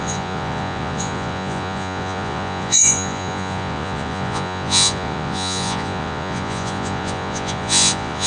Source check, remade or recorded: remade